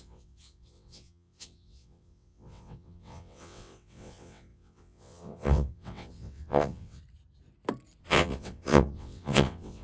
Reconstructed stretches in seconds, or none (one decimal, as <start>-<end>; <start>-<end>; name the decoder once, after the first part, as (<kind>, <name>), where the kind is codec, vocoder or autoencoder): 0.0-7.0 (vocoder, WaveNeXt); 8.0-9.8